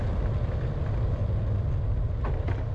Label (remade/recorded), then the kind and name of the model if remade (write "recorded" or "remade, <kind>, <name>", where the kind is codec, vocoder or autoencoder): recorded